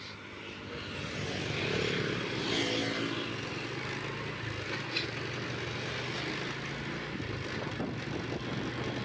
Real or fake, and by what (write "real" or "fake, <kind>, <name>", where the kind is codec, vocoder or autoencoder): real